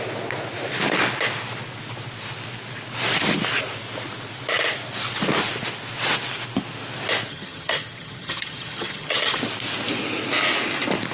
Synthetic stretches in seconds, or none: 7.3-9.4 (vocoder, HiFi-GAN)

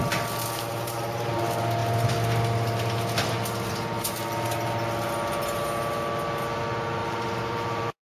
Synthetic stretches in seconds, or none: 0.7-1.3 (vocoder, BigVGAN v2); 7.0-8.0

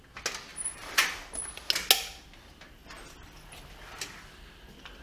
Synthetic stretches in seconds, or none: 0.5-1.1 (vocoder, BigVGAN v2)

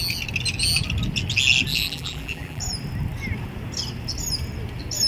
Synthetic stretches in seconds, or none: 1.7-2.6 (vocoder, BigVGAN v2)

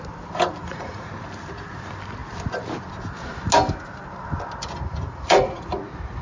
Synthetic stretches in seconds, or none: 0.6-1.1 (vocoder, Vocos); 4.9-5.6

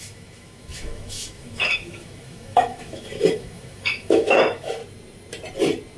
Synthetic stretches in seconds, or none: 0.0-4.8 (autoencoder, DAC-VAE)